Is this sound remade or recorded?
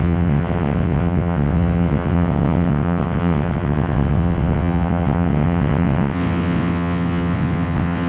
remade